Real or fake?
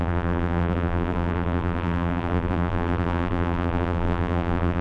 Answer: fake